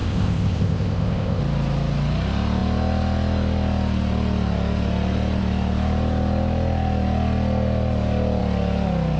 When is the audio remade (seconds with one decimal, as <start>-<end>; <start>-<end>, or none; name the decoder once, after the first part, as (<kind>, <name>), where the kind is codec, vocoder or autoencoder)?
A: 0.0-1.4 (codec, ZipCodec)